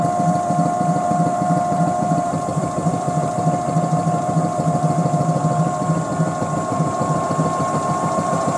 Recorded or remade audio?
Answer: remade